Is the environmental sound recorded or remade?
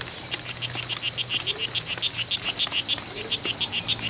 recorded